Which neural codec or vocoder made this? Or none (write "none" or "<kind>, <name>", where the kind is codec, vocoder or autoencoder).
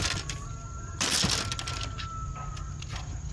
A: none